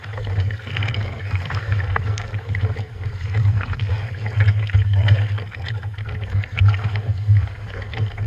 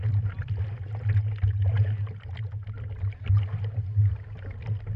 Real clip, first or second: second